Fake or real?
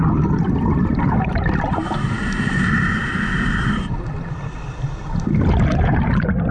real